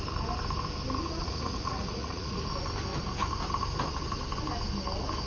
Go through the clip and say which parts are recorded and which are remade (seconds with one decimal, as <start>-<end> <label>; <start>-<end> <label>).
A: 0.0-1.2 recorded; 1.2-2.5 remade; 2.5-5.3 recorded